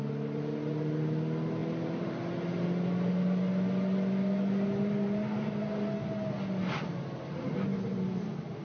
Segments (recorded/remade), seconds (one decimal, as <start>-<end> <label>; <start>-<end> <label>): 0.0-1.6 recorded; 1.6-2.2 remade; 2.2-8.6 recorded